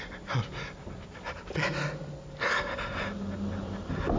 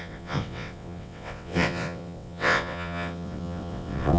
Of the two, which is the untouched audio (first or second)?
first